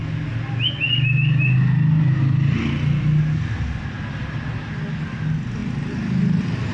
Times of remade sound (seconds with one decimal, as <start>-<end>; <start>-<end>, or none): 5.6-6.7

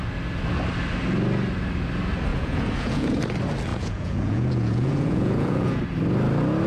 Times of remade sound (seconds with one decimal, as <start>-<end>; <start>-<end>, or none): 2.3-3.2; 3.7-5.8

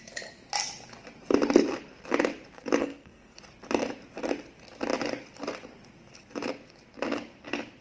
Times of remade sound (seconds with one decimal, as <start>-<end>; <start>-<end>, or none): 2.8-3.4

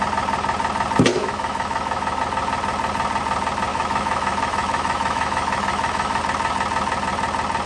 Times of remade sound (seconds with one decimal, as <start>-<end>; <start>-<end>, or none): 1.1-2.2; 3.7-6.2

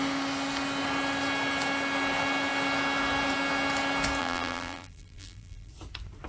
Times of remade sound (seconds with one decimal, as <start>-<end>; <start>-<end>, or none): 4.2-5.7

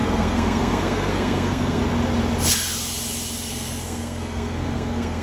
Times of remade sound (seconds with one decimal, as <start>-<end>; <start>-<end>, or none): 0.0-1.8; 3.5-5.2

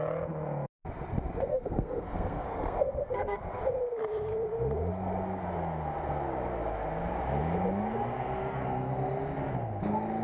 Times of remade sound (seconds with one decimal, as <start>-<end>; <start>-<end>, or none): 1.5-3.6